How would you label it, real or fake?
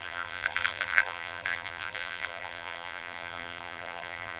fake